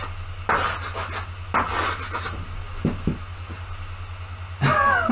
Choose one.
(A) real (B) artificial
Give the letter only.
A